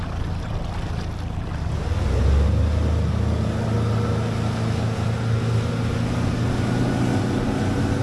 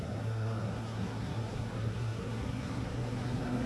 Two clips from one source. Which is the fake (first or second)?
second